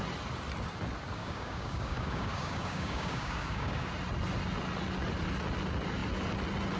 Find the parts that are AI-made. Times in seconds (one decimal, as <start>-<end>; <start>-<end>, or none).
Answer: 1.2-3.9